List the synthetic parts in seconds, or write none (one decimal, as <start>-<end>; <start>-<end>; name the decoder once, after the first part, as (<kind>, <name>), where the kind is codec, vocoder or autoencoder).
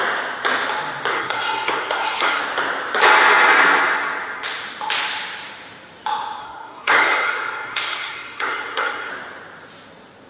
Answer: 1.1-2.4 (codec, SNAC); 6.4-9.1